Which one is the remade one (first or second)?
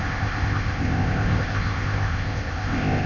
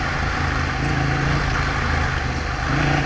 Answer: first